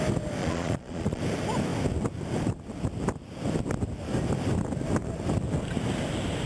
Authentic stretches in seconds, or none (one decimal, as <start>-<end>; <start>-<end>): 0.0-0.4; 1.2-6.5